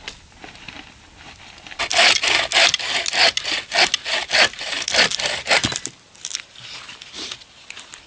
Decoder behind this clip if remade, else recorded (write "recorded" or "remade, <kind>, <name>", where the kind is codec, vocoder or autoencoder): recorded